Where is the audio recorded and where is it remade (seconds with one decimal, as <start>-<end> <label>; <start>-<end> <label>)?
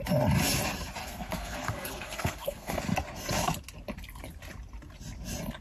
0.0-1.0 recorded; 1.0-2.8 remade; 2.8-5.6 recorded